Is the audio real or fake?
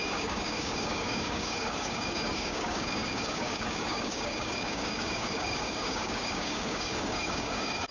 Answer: fake